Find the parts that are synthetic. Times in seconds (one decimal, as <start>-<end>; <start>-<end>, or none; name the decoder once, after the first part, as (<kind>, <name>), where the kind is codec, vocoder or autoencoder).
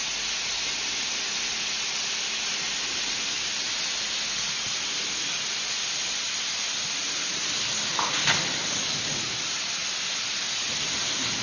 none